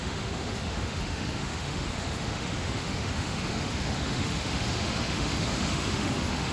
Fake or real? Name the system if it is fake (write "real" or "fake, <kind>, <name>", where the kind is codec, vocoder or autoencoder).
fake, autoencoder, DAC-VAE